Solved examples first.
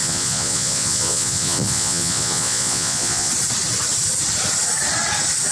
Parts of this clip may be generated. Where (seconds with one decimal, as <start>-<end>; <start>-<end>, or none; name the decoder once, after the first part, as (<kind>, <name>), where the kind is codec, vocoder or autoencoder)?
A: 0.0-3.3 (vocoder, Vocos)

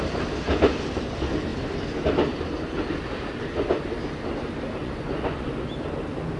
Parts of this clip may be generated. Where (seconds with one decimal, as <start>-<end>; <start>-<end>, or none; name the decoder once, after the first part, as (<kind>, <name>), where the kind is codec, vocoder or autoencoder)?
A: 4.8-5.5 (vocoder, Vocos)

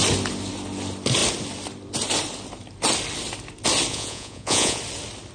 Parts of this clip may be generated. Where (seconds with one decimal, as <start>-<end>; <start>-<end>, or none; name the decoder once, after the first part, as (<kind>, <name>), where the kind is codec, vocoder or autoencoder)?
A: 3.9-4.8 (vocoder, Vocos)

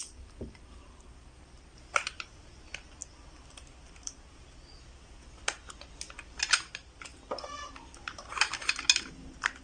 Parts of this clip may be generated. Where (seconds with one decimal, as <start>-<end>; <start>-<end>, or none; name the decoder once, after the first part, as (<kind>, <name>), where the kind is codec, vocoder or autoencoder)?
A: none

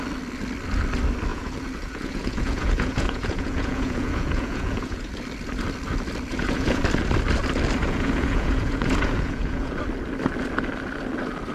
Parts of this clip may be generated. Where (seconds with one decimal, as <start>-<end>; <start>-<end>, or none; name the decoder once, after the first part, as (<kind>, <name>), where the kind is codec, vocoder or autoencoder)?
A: 1.3-5.1 (vocoder, Vocos); 6.3-6.8; 7.8-9.8